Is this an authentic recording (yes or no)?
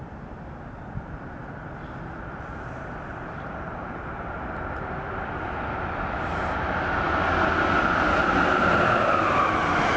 yes